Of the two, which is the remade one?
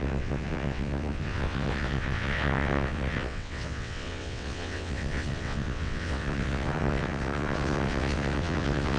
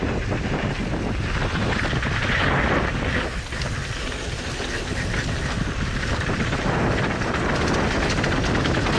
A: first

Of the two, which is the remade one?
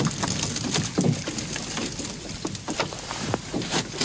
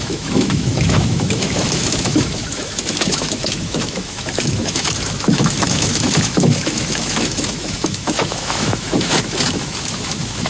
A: second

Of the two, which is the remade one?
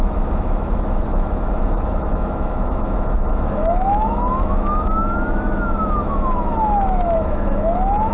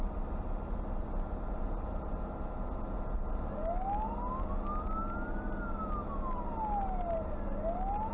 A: first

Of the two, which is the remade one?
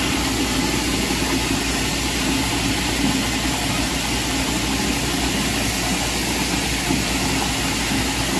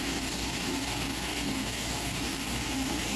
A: second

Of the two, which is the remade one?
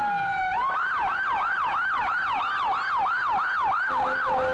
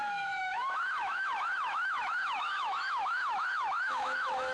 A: second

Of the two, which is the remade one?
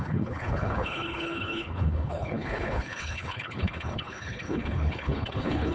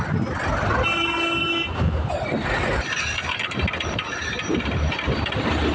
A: first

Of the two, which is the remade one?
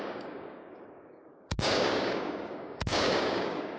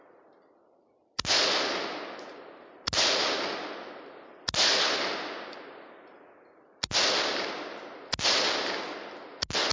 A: first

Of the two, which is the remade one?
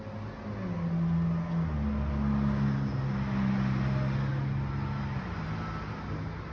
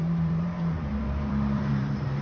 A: second